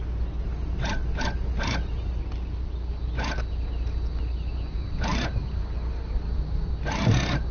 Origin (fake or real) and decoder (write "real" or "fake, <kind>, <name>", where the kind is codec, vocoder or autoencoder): real